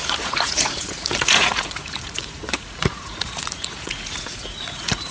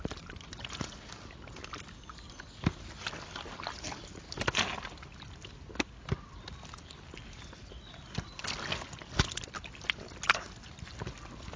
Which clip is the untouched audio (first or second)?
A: second